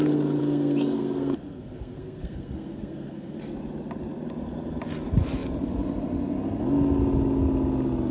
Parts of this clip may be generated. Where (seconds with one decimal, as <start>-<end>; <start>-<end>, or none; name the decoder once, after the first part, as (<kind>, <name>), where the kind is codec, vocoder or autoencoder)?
0.4-3.4 (codec, SNAC)